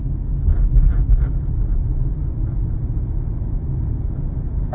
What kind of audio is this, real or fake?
real